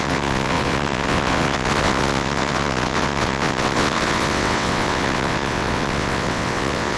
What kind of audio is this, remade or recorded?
remade